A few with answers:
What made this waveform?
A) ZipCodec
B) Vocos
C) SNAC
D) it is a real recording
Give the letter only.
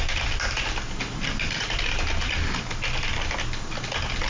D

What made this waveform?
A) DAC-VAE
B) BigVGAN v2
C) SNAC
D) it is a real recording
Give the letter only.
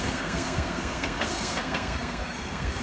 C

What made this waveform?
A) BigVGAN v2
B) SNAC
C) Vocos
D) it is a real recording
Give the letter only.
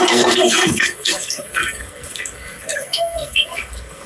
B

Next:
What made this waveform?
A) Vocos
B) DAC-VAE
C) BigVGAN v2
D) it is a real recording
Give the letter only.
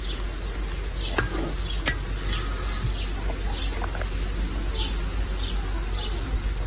D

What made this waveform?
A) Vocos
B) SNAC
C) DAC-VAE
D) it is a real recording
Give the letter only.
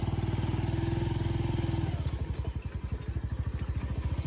D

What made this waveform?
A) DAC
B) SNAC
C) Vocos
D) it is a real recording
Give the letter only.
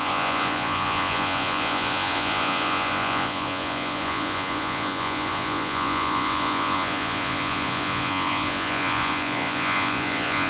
C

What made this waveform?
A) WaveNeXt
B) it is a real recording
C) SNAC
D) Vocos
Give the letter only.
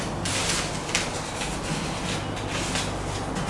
B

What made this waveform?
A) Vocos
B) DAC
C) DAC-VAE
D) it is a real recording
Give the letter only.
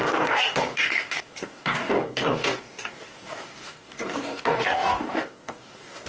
B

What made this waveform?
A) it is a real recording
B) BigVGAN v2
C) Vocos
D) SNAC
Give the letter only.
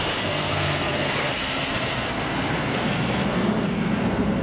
D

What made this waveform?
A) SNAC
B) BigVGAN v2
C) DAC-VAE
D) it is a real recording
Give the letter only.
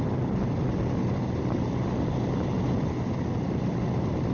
D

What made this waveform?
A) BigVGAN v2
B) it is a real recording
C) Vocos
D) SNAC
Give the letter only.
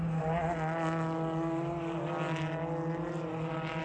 B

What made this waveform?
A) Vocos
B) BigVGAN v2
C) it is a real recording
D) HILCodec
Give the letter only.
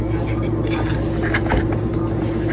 C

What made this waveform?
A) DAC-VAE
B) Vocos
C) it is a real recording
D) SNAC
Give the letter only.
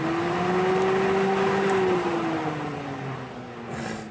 C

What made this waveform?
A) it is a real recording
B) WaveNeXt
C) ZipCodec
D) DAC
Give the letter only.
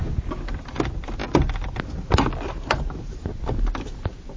A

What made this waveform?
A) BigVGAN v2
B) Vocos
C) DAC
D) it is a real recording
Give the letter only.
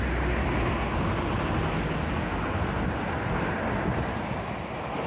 D